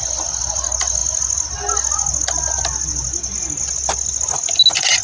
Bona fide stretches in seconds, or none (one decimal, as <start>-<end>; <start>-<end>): 0.0-5.0